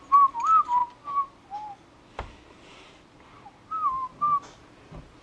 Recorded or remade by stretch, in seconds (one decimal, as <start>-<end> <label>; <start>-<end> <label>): 0.0-5.2 recorded